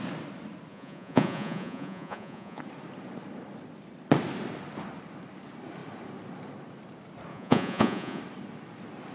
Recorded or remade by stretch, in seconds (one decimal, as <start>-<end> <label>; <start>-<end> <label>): 0.0-0.7 recorded; 0.7-2.6 remade; 2.6-7.3 recorded; 7.3-8.2 remade; 8.2-9.1 recorded